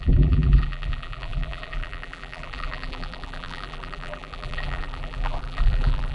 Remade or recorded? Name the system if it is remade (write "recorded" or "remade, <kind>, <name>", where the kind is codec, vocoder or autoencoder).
remade, vocoder, BigVGAN v2